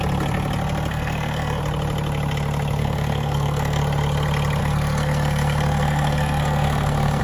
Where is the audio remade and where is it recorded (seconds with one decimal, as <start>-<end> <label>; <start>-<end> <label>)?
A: 0.0-0.9 recorded; 0.9-1.6 remade; 1.6-2.8 recorded; 2.8-3.8 remade; 3.8-4.6 recorded; 4.6-7.2 remade